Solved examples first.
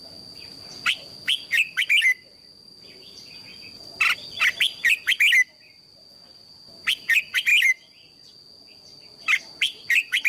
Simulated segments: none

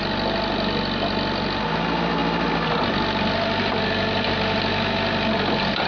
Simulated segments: none

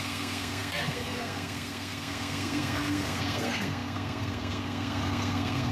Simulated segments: 0.0-5.7 (codec, SNAC)

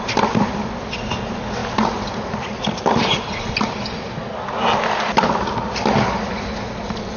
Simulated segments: none

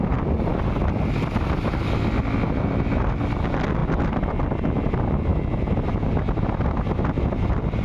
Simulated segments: none

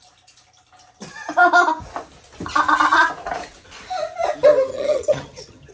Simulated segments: 4.7-5.7 (vocoder, HiFi-GAN)

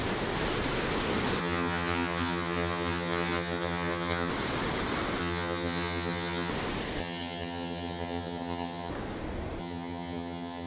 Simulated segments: 1.4-4.3 (vocoder, HiFi-GAN); 5.2-6.5; 7.0-8.9; 9.6-10.7

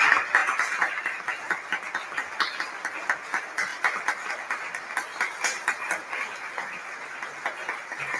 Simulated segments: none